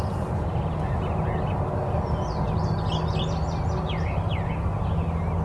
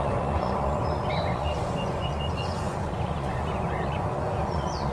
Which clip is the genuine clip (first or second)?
first